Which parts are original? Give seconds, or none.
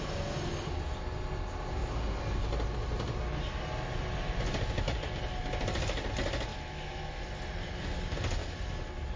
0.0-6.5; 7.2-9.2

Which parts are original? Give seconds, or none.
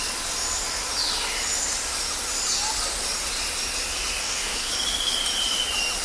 0.0-4.2; 4.7-6.0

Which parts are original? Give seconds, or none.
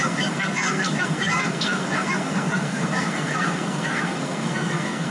none